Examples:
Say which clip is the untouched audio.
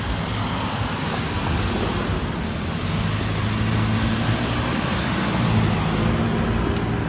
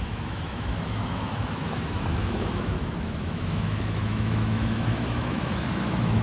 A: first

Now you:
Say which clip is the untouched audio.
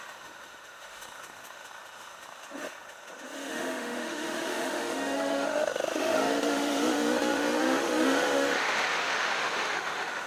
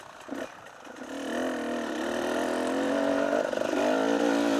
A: second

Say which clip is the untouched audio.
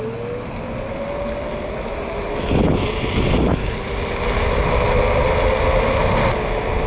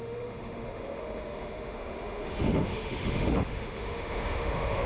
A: first